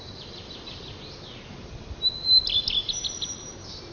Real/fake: real